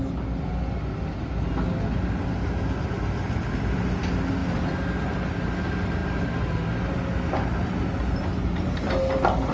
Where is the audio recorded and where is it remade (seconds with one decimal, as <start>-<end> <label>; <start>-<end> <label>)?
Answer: 0.0-9.5 recorded